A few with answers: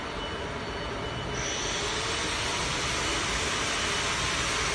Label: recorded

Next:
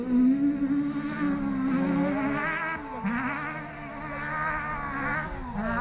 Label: recorded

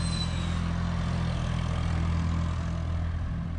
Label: recorded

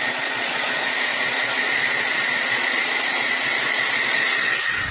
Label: remade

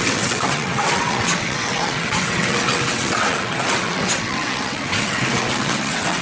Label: remade